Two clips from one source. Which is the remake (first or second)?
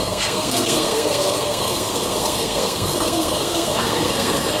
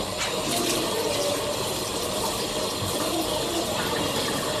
first